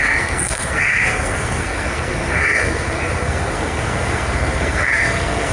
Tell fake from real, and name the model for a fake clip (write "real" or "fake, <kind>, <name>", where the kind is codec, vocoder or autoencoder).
fake, codec, SNAC